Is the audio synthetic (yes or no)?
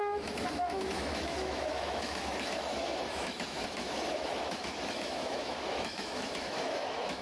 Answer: yes